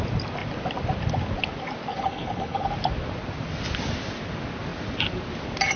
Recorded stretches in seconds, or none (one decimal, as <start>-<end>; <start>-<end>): 0.0-1.9; 2.7-5.8